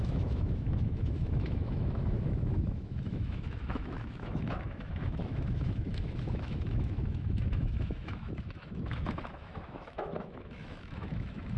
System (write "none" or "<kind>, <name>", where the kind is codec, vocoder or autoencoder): autoencoder, DAC-VAE